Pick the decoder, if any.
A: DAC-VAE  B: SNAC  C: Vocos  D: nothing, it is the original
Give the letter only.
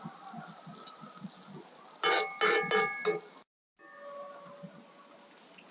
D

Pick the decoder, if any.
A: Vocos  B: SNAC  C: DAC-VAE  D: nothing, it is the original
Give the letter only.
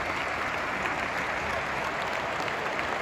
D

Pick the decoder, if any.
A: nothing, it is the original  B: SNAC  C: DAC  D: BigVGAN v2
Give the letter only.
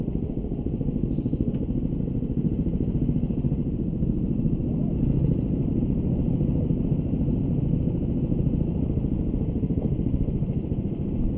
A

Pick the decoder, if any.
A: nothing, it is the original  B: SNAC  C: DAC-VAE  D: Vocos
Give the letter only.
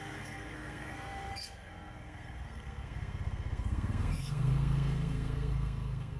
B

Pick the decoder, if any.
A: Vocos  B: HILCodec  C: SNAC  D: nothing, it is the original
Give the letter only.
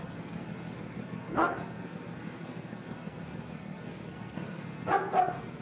C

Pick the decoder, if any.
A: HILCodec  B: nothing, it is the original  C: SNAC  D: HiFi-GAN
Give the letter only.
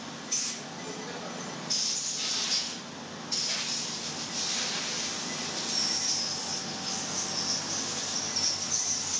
B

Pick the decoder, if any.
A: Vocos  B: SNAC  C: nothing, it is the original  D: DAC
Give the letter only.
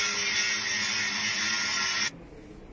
C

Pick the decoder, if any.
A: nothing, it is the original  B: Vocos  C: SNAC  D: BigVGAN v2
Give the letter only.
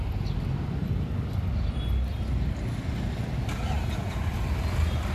A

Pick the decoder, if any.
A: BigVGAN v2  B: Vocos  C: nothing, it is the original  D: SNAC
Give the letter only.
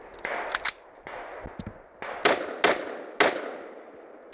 C